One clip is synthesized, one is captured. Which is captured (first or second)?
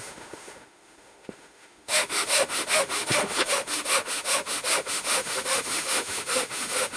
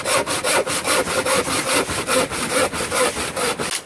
second